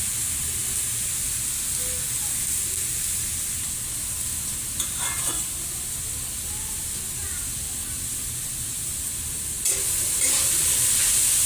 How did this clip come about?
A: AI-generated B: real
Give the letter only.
B